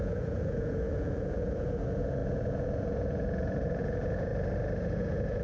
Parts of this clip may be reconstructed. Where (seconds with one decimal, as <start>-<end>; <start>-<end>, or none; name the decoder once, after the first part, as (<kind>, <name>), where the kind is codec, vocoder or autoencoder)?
0.0-4.3 (vocoder, Vocos); 4.8-5.4